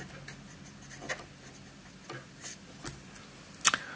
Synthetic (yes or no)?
no